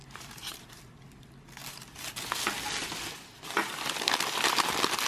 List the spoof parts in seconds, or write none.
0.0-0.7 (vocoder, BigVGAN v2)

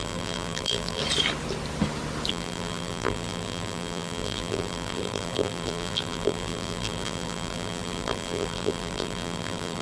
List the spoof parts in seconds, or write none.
0.0-1.0 (vocoder, BigVGAN v2); 2.3-9.8

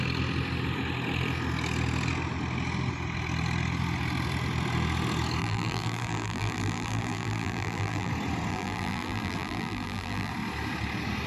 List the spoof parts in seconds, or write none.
5.4-8.1 (vocoder, BigVGAN v2); 8.5-10.3

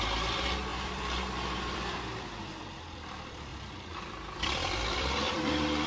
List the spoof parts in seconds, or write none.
0.0-5.9 (vocoder, BigVGAN v2)

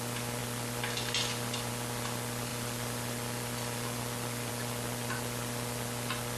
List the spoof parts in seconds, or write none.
0.4-1.7 (vocoder, BigVGAN v2); 2.5-4.5

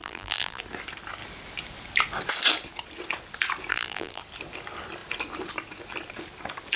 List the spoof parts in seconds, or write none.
0.0-0.6 (vocoder, BigVGAN v2); 3.7-4.2

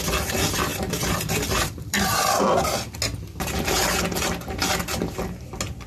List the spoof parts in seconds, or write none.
0.7-2.4 (vocoder, BigVGAN v2)

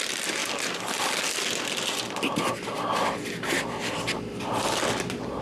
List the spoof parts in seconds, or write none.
0.0-0.4 (vocoder, BigVGAN v2); 3.6-5.4